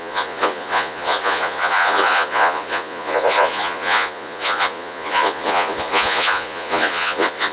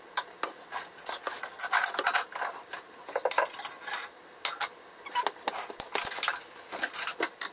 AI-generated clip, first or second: first